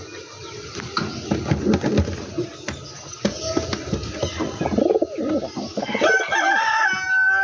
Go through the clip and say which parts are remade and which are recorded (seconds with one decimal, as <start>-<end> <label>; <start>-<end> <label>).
0.0-7.4 recorded